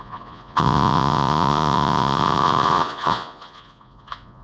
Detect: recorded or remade remade